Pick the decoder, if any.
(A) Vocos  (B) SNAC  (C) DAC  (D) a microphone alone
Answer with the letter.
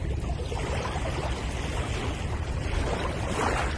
D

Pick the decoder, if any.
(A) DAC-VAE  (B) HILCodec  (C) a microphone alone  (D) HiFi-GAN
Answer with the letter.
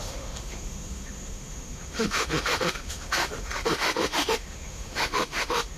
A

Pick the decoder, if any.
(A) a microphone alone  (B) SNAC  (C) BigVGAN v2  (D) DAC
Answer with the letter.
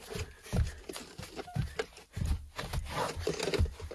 A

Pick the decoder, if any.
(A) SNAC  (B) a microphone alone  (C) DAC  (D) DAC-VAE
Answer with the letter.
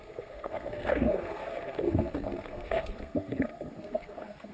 A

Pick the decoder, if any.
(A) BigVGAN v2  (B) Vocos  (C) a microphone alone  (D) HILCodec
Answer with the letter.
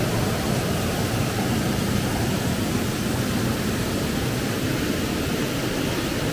C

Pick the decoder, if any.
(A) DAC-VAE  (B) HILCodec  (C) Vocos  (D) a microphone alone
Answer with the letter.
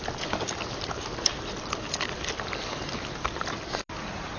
D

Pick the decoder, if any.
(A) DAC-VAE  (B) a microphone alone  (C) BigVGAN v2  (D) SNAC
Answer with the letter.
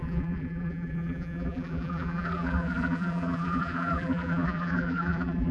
C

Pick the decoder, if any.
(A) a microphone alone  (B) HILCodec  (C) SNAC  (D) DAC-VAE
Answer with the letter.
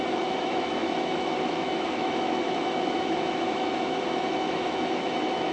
D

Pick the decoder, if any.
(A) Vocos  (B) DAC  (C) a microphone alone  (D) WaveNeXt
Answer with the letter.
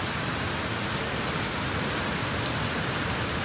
C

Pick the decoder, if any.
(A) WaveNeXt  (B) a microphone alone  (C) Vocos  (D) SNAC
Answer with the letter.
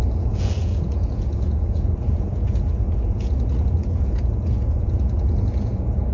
C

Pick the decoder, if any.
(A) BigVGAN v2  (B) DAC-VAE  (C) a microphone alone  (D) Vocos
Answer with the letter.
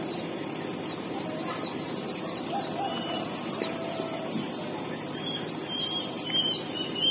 A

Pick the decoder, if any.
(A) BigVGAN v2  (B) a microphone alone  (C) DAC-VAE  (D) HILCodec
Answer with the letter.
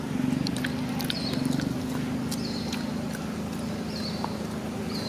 B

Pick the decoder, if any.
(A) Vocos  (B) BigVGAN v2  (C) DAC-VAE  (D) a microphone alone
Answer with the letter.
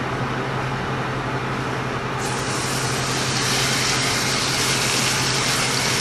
D